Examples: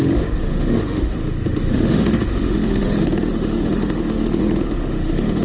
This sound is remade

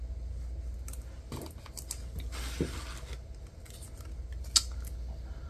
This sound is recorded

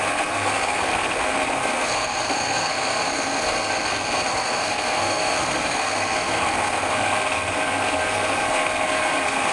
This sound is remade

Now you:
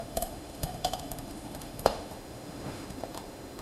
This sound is remade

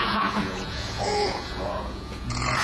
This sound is remade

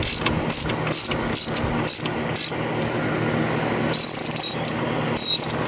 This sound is recorded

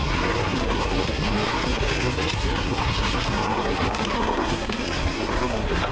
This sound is remade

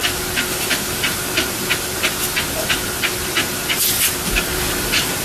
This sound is recorded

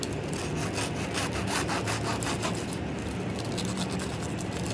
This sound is recorded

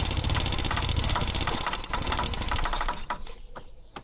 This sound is recorded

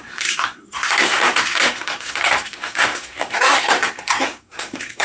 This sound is remade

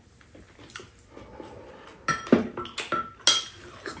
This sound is recorded